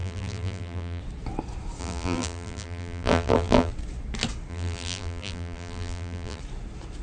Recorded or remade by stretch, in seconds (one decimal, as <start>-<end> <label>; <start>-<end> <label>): 0.0-1.0 remade; 1.0-1.8 recorded; 1.8-3.7 remade; 3.7-4.5 recorded; 4.5-6.4 remade; 6.4-7.0 recorded